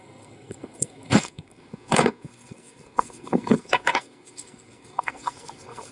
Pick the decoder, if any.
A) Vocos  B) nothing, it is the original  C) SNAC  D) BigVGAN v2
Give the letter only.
C